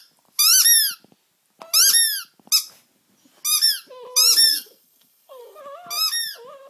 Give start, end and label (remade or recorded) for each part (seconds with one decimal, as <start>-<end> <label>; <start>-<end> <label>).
0.0-4.5 recorded; 4.5-5.6 remade; 5.6-6.7 recorded